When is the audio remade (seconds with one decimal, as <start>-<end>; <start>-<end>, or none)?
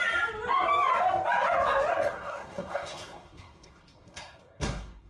1.9-5.1